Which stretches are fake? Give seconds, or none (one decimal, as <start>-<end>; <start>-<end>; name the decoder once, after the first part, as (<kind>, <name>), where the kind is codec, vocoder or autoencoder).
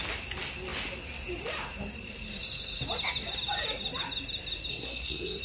4.7-5.4 (codec, SNAC)